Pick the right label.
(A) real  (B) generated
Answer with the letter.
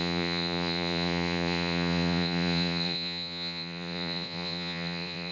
B